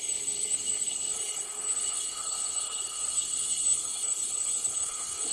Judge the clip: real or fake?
fake